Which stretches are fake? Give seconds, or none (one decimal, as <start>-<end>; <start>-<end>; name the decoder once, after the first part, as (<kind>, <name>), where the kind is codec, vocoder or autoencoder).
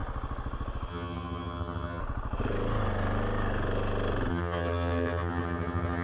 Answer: 0.9-2.0 (vocoder, HiFi-GAN); 4.3-6.0